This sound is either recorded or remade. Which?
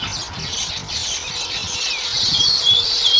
recorded